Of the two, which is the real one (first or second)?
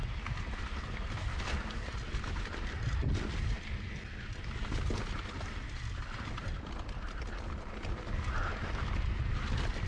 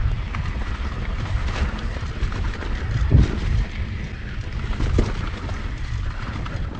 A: first